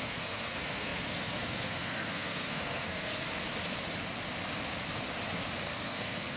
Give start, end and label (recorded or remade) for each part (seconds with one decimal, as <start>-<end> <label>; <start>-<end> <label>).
0.0-3.1 remade; 3.1-5.7 recorded; 5.7-6.4 remade